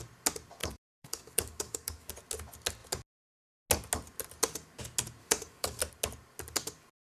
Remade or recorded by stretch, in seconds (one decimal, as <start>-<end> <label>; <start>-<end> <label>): 0.0-0.6 recorded; 0.6-2.1 remade; 2.1-5.2 recorded; 5.2-5.8 remade; 5.8-7.0 recorded